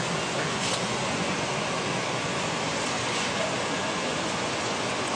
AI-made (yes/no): yes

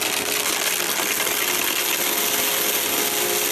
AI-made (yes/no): no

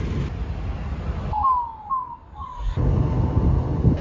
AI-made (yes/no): no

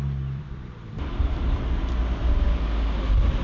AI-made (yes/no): no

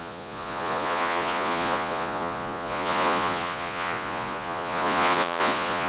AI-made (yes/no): yes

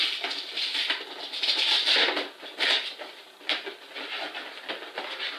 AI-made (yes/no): no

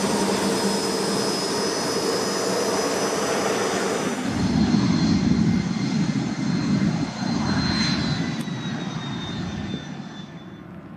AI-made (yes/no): no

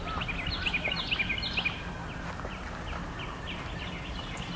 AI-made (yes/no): no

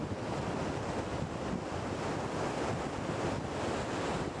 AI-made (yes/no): no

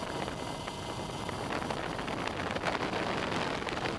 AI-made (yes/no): no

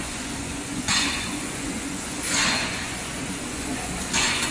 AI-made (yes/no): yes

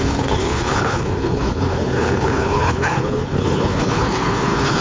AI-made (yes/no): yes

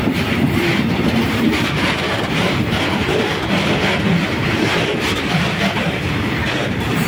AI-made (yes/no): yes